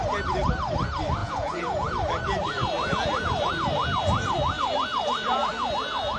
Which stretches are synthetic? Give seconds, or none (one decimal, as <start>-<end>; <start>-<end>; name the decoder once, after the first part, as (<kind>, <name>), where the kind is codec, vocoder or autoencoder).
1.2-1.9 (vocoder, Vocos)